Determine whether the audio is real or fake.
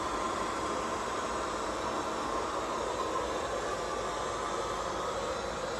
real